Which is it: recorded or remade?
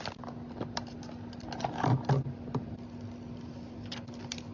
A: recorded